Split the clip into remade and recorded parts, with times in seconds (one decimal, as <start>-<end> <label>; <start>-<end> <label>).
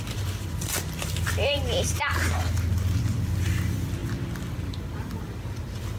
0.0-1.6 remade; 1.6-2.7 recorded; 2.7-6.0 remade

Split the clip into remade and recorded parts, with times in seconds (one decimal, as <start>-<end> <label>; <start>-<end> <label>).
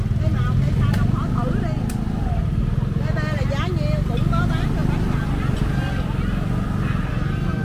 0.0-7.6 recorded